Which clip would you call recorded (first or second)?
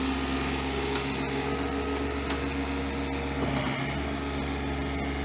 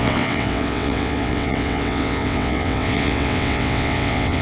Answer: first